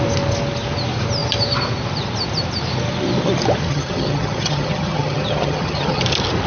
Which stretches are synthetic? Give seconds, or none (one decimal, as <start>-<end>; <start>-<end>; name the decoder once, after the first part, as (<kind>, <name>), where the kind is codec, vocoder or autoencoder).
3.7-6.0 (vocoder, HiFi-GAN)